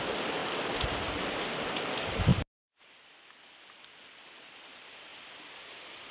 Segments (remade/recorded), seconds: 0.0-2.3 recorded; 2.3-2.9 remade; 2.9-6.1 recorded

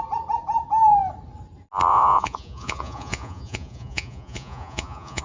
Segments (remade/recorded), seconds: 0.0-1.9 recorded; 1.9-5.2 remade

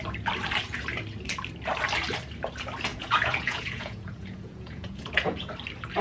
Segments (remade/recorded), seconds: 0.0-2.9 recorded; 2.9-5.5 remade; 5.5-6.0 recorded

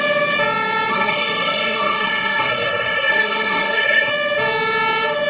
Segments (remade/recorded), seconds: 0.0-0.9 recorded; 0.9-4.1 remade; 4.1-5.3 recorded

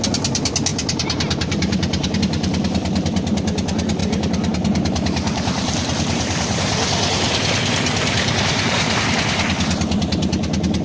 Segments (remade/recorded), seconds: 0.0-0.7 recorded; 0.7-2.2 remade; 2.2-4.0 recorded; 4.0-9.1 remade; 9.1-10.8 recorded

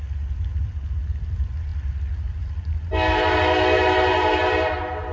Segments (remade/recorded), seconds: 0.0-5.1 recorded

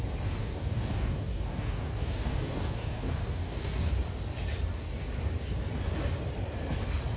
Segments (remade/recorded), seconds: 0.0-0.4 recorded; 0.4-3.9 remade; 3.9-7.2 recorded